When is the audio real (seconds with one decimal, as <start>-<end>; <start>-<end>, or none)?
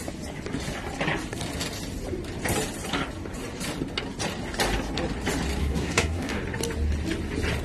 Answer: 0.0-5.6; 6.4-7.6